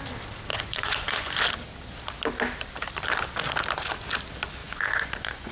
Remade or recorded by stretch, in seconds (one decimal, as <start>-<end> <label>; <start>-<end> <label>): 0.0-0.5 recorded; 0.5-1.4 remade; 1.4-4.6 recorded; 4.6-5.5 remade